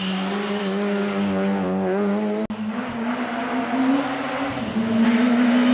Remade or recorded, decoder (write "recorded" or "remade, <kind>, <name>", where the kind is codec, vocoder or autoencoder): recorded